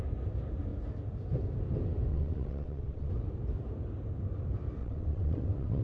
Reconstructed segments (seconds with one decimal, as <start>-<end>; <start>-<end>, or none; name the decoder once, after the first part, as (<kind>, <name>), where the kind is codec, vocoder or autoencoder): 2.1-3.1 (vocoder, WaveNeXt); 4.8-5.8

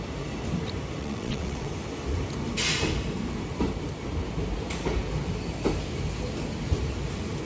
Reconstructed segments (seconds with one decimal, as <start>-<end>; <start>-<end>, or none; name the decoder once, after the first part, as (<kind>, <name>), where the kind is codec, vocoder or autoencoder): 1.0-1.7 (vocoder, WaveNeXt)

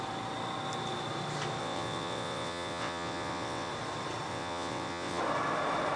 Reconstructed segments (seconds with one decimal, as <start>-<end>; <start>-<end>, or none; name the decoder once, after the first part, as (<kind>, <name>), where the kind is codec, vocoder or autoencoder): 1.6-3.7 (vocoder, WaveNeXt); 4.3-5.2